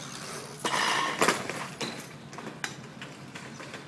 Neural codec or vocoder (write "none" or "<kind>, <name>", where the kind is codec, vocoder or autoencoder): none